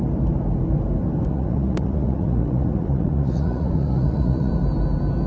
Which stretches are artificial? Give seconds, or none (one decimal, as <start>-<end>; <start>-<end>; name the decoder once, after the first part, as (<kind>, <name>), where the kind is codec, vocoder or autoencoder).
1.3-4.5 (vocoder, Vocos)